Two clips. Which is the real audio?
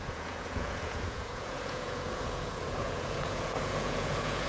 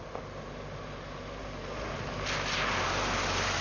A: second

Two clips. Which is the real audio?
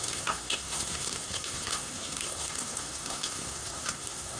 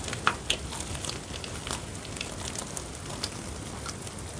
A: second